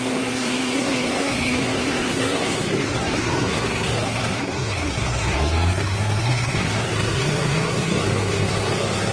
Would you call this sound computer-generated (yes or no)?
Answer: yes